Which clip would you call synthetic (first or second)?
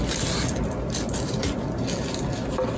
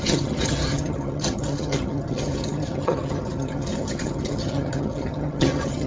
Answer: second